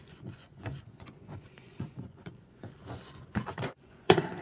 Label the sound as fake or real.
fake